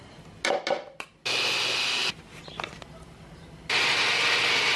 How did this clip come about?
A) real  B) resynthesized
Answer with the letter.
A